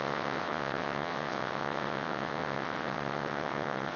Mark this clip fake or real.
fake